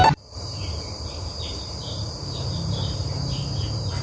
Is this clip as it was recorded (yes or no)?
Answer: no